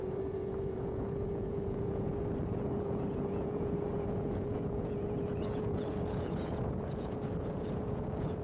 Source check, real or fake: fake